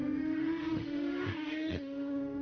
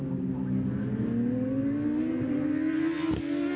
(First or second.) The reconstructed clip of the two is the first